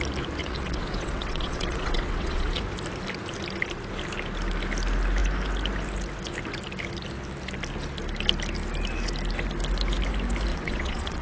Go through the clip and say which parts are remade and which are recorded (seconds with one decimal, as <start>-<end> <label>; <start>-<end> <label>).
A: 0.0-0.4 recorded; 0.4-2.6 remade; 2.6-10.5 recorded; 10.5-11.2 remade